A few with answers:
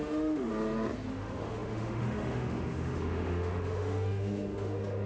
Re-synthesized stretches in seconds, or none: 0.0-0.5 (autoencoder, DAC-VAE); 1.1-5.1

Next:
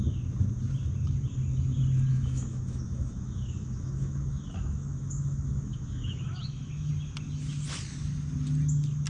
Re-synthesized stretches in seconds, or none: 2.1-6.9 (autoencoder, DAC-VAE)